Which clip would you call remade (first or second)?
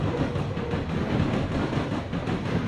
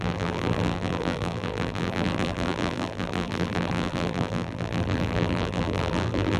second